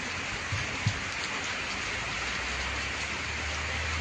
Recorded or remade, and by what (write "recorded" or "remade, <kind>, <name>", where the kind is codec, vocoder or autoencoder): recorded